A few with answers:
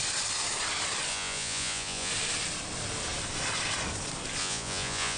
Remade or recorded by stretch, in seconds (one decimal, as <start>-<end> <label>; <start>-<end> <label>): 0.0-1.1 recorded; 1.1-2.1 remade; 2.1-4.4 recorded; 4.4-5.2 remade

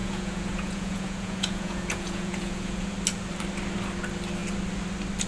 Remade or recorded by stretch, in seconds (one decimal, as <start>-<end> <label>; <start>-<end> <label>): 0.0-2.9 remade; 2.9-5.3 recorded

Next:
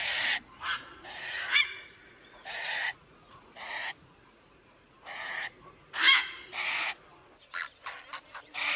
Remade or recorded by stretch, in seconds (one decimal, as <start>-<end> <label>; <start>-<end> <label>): 0.0-7.2 remade; 7.2-8.2 recorded; 8.2-8.8 remade

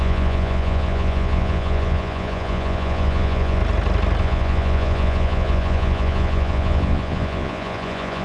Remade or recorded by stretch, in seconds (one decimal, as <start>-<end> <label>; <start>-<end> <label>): 0.0-3.6 remade; 3.6-4.2 recorded; 4.2-8.2 remade